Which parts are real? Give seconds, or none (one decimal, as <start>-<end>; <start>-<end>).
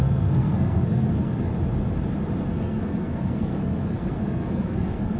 1.5-2.4